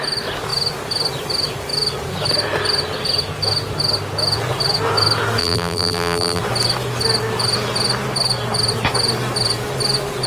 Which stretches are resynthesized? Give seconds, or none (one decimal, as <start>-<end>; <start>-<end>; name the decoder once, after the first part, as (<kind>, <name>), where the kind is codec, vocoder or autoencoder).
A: 5.4-6.4 (vocoder, BigVGAN v2)